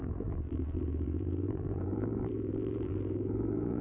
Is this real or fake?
fake